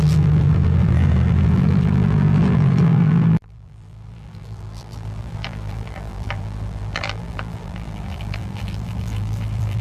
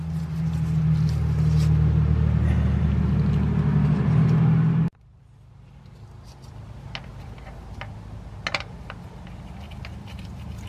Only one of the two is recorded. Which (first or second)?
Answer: second